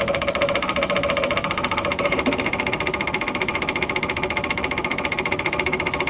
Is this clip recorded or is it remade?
recorded